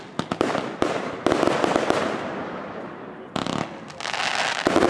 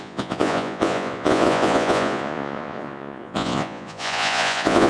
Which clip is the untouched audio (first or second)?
first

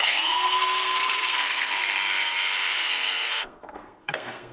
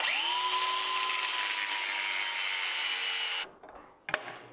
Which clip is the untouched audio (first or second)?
second